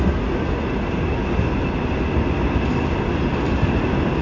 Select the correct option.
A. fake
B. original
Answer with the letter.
B